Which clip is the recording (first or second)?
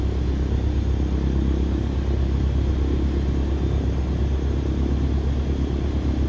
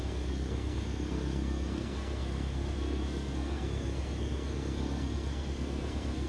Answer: first